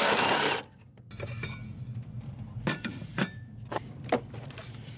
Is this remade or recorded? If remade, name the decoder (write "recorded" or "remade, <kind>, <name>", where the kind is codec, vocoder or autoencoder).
remade, vocoder, BigVGAN v2